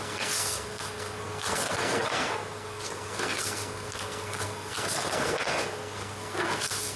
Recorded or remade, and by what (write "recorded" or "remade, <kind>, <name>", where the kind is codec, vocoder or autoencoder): remade, codec, SNAC